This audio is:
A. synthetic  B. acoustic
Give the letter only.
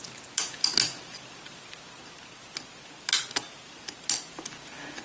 B